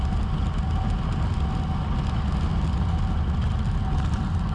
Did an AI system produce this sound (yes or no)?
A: no